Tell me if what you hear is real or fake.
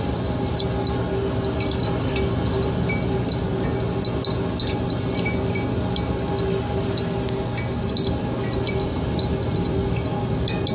real